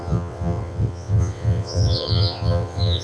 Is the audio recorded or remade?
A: remade